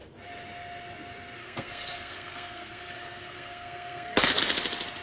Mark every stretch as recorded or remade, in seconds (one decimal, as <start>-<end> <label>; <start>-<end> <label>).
0.0-1.4 recorded; 1.4-4.4 remade; 4.4-5.0 recorded